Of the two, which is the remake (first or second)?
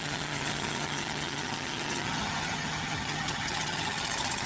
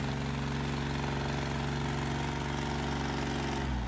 first